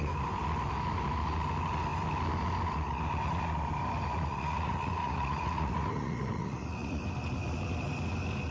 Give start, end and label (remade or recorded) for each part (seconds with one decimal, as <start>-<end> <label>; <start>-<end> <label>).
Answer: 0.0-4.1 recorded; 4.1-7.0 remade; 7.0-8.5 recorded